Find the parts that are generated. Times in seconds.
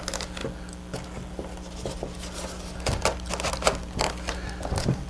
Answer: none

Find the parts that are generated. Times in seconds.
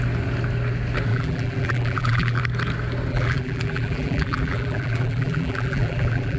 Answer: 1.1-2.4 (vocoder, BigVGAN v2); 3.1-6.4